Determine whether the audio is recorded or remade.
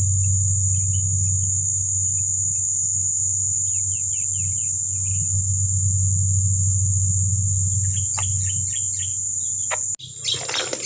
recorded